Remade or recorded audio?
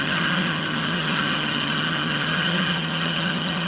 remade